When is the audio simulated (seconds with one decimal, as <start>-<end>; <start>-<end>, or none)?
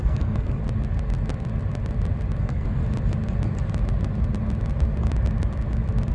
0.0-0.6; 2.4-2.8